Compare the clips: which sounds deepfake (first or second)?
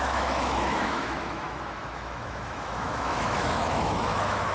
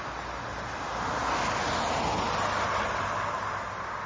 first